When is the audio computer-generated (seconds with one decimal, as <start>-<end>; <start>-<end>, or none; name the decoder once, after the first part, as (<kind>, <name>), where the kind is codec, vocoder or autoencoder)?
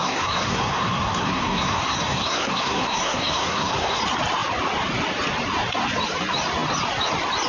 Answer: 0.0-4.0 (codec, SNAC)